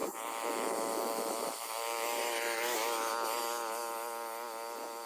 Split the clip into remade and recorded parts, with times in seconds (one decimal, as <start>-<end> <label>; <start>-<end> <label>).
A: 0.0-3.1 remade; 3.1-5.1 recorded